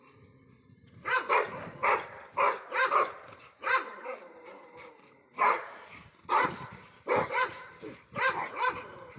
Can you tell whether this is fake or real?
fake